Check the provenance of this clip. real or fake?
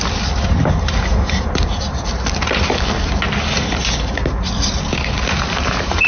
real